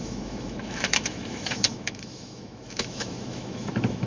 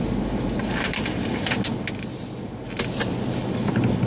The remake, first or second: first